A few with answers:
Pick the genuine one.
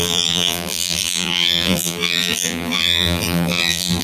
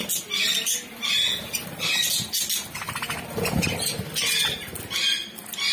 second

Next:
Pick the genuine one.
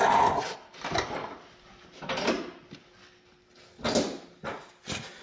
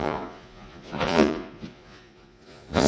first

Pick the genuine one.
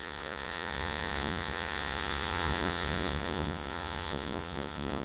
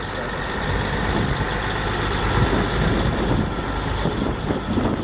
second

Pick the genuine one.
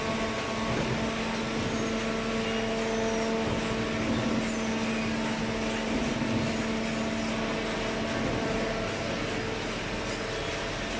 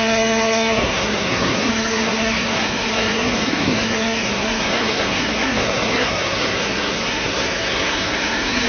first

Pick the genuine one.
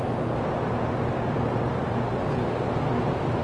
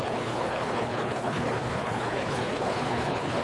first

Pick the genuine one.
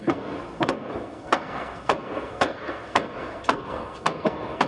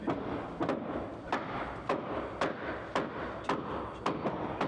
second